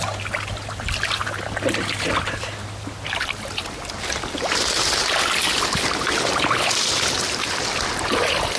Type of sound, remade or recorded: recorded